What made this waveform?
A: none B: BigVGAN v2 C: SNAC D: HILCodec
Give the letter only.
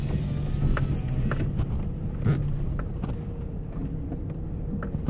A